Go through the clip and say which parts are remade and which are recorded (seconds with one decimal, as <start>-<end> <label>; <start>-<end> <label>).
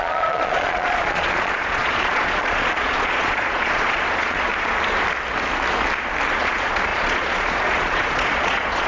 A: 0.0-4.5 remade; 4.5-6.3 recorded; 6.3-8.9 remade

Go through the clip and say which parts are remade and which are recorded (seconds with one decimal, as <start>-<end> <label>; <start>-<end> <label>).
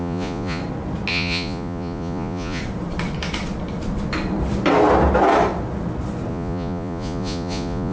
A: 0.0-0.6 remade; 0.6-1.1 recorded; 1.1-2.6 remade; 2.6-6.3 recorded; 6.3-7.9 remade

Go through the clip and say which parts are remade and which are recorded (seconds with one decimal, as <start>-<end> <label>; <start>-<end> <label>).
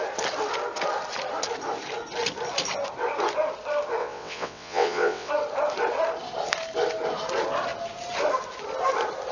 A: 0.0-4.0 recorded; 4.0-5.3 remade; 5.3-9.3 recorded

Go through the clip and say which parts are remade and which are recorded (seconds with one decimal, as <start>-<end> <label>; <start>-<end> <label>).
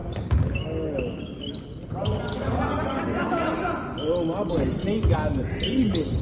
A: 0.0-6.2 recorded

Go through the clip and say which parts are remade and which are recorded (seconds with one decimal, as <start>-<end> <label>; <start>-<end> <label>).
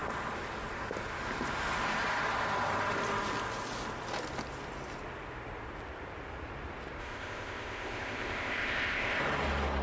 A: 0.0-7.0 recorded; 7.0-9.2 remade; 9.2-9.8 recorded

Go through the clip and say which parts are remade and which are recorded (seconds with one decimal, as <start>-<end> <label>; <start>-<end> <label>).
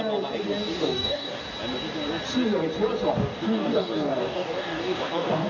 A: 0.0-0.8 recorded; 0.8-1.4 remade; 1.4-3.1 recorded; 3.1-5.5 remade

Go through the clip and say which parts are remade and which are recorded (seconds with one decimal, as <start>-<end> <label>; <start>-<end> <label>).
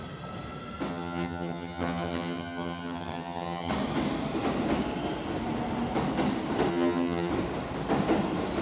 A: 0.0-0.9 recorded; 0.9-3.7 remade; 3.7-6.7 recorded; 6.7-7.3 remade; 7.3-8.6 recorded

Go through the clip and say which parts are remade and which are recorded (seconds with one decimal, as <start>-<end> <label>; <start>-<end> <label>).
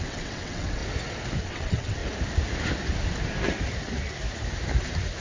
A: 0.0-0.8 remade; 0.8-1.4 recorded; 1.4-2.0 remade; 2.0-5.2 recorded